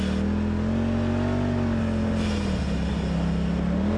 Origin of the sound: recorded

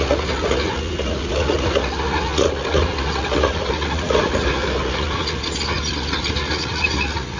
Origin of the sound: remade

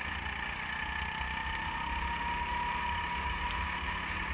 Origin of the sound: recorded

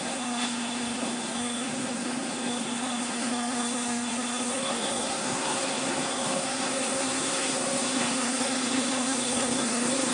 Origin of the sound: remade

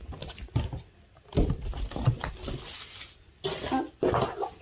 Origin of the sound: recorded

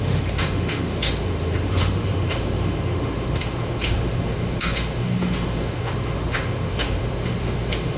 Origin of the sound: remade